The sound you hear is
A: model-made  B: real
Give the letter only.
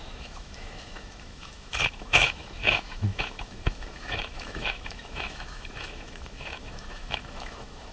A